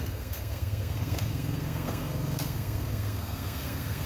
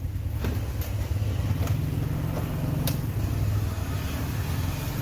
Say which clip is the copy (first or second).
first